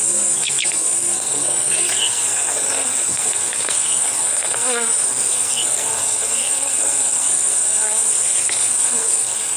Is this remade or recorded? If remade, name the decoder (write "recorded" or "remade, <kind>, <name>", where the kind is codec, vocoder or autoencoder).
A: remade, codec, SNAC